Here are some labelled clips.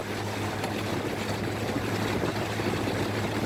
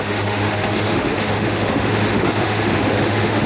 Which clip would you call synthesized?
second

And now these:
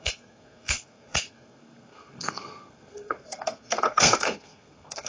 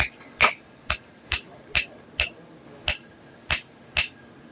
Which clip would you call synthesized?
first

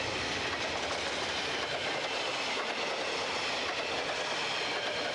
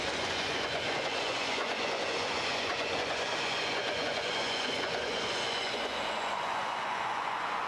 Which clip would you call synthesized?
second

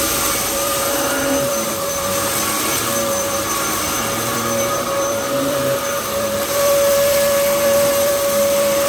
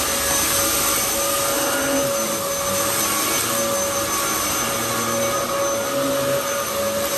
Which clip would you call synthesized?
first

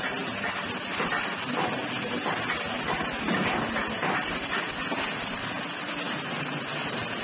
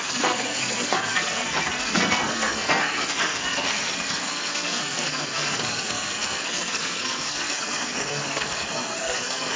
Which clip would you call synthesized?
second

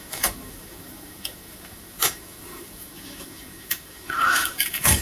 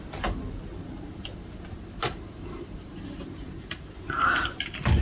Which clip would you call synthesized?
first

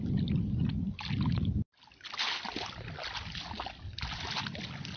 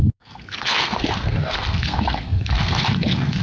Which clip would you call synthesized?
second